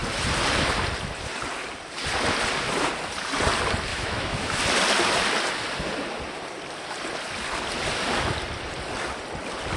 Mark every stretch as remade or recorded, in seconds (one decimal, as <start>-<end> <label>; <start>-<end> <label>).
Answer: 0.0-3.9 recorded; 3.9-4.6 remade; 4.6-9.8 recorded